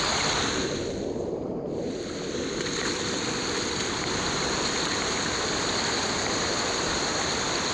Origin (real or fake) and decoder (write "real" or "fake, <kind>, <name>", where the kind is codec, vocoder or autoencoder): real